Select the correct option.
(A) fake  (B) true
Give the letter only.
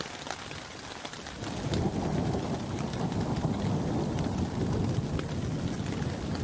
A